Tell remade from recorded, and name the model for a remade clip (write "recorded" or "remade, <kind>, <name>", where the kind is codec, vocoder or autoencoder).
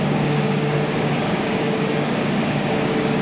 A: remade, codec, DAC